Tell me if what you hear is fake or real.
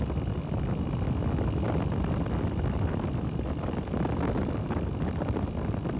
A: real